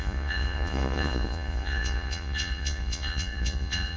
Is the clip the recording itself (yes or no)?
no